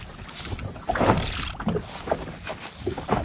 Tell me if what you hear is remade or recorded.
recorded